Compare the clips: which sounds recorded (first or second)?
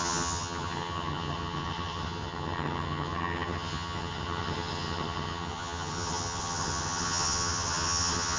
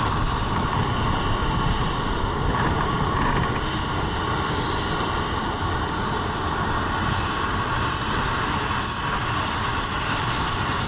second